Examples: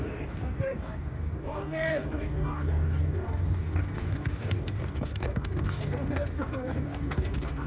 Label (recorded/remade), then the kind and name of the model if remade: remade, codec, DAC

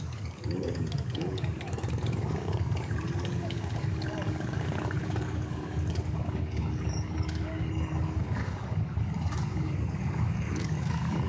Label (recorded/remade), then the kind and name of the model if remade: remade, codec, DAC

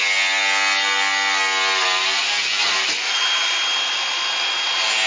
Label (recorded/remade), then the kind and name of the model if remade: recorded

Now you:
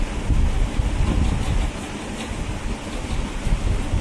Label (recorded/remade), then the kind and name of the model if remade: recorded